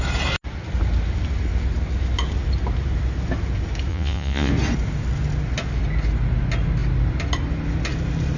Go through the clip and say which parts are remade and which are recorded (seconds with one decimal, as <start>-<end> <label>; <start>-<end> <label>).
0.0-3.9 recorded; 3.9-4.5 remade; 4.5-8.4 recorded